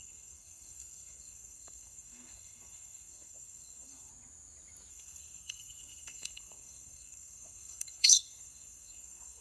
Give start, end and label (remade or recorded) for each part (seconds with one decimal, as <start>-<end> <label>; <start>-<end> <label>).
0.0-4.1 remade; 4.1-4.9 recorded; 4.9-9.4 remade